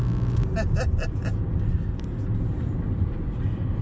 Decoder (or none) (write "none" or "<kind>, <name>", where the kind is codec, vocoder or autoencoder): none